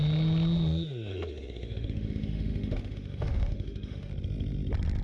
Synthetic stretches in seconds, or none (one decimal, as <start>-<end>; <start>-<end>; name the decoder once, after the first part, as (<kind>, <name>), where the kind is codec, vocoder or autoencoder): 1.1-4.1 (autoencoder, DAC-VAE)